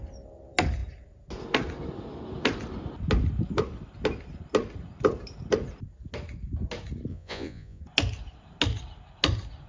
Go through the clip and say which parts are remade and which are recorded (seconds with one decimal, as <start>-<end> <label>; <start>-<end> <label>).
0.0-7.1 recorded; 7.1-7.8 remade; 7.8-9.7 recorded